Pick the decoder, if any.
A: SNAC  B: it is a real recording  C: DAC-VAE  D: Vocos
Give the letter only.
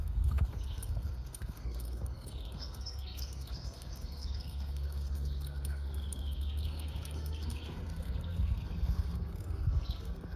A